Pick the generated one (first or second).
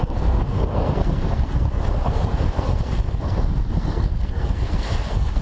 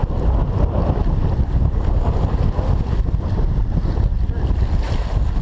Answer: first